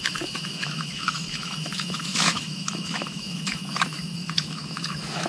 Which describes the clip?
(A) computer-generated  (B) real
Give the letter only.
A